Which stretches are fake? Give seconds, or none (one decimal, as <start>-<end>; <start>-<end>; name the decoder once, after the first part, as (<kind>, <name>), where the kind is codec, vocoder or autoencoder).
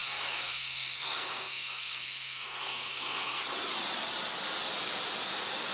0.0-3.4 (codec, SNAC)